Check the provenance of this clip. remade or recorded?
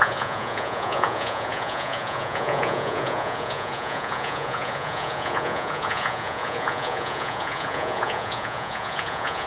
remade